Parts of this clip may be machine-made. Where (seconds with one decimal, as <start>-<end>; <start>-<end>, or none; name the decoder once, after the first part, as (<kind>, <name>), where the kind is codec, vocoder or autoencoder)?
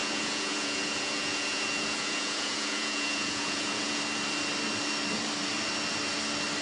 0.0-4.0 (vocoder, Vocos)